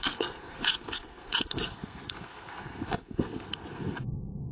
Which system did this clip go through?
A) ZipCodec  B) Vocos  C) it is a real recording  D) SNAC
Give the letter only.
D